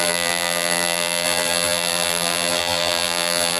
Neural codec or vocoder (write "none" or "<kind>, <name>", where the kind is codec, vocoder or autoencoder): vocoder, BigVGAN v2